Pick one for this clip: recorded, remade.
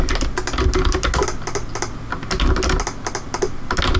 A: recorded